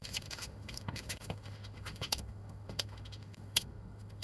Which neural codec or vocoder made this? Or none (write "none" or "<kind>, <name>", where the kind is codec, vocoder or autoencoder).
autoencoder, DAC-VAE